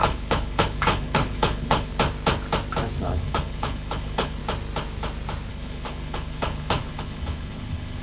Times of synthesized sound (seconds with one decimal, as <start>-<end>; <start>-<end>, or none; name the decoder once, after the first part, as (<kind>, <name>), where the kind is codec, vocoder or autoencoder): 0.0-1.9 (codec, HILCodec); 3.0-4.4; 5.5-8.0